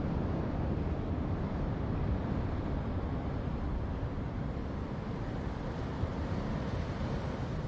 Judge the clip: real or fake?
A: real